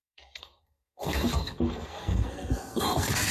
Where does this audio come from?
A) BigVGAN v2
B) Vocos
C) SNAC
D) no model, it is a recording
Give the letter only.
C